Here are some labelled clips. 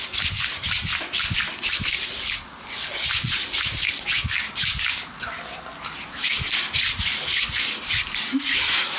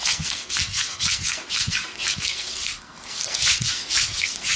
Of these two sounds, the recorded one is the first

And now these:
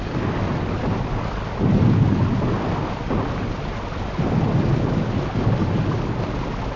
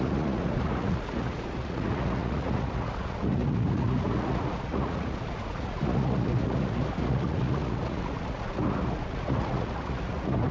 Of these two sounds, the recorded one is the first